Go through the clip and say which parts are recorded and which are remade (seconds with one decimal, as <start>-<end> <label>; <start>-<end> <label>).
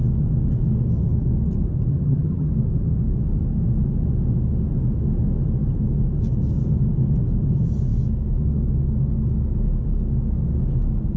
0.0-1.9 recorded; 1.9-2.5 remade; 2.5-11.2 recorded